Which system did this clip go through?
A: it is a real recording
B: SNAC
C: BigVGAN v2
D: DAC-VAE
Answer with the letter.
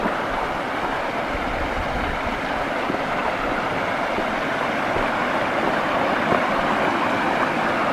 A